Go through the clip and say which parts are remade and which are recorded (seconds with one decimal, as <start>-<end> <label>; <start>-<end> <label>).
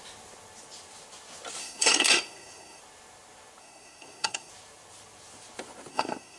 0.0-1.6 recorded; 1.6-2.8 remade; 2.8-3.6 recorded; 3.6-4.5 remade; 4.5-5.9 recorded; 5.9-6.4 remade